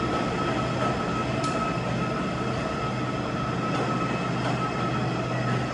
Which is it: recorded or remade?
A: recorded